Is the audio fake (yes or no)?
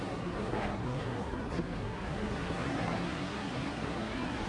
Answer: yes